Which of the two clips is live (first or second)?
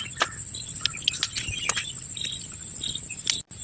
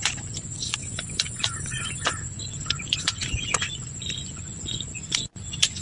first